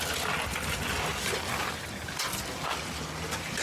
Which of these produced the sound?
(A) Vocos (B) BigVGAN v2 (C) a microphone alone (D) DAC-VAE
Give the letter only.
C